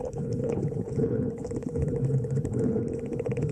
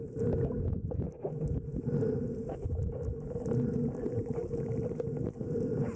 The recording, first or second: second